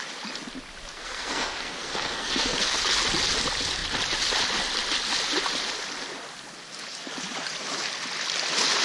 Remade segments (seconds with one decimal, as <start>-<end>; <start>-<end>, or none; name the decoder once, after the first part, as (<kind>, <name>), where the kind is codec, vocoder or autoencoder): 0.9-2.8 (codec, SNAC)